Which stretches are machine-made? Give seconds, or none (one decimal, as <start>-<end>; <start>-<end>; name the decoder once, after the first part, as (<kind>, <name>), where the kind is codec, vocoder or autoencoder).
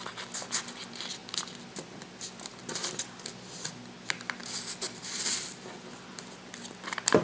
none